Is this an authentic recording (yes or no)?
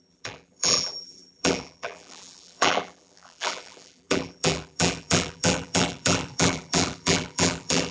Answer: no